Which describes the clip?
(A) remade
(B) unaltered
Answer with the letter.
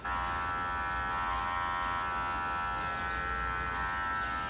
B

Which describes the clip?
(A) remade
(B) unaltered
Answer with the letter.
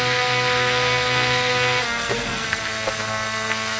A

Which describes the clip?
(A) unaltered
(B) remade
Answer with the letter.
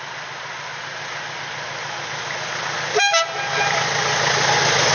A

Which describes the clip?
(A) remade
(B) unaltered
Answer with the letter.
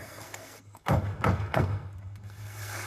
A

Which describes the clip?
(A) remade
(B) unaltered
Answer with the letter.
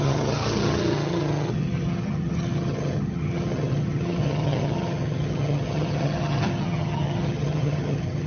A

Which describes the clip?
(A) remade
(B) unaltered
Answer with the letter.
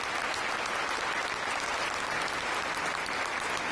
B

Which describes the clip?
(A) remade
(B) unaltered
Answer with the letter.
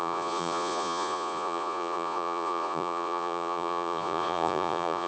A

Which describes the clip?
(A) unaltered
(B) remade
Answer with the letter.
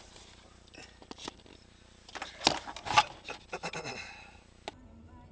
A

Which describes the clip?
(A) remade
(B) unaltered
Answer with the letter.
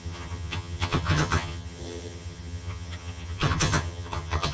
A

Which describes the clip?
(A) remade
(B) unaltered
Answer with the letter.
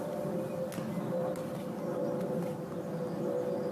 B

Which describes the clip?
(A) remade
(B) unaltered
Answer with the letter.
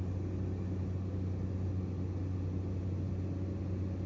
B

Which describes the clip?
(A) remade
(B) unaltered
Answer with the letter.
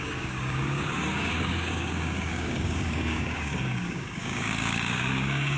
A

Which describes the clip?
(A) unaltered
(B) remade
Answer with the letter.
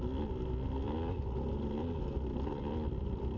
A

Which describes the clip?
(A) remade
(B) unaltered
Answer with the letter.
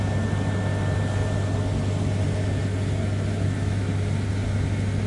B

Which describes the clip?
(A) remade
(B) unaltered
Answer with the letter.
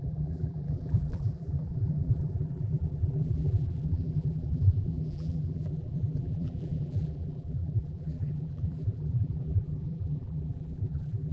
A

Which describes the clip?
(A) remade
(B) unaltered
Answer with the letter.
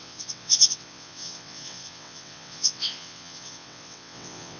A